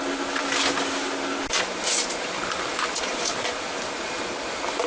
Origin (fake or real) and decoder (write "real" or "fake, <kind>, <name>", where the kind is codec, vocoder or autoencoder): real